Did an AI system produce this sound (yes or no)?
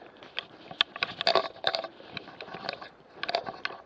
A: no